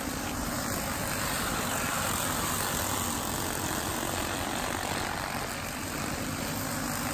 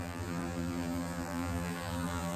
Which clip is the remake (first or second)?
second